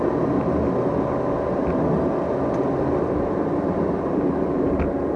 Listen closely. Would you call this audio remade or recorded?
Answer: recorded